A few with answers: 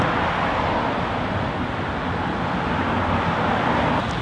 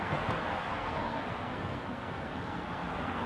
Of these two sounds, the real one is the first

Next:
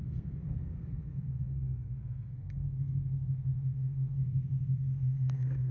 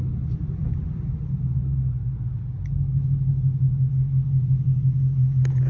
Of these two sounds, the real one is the second